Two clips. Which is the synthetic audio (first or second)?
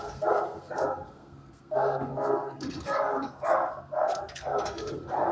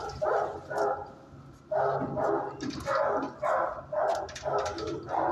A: first